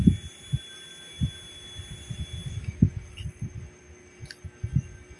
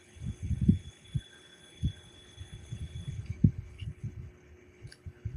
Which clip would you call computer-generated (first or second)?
second